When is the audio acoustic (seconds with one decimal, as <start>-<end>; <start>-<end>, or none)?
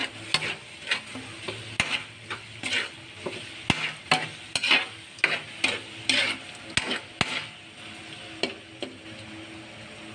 0.0-10.1